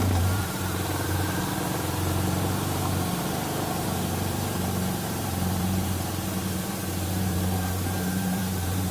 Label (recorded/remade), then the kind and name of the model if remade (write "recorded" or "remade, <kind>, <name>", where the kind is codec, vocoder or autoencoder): remade, vocoder, BigVGAN v2